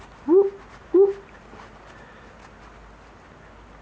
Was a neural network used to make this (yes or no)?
no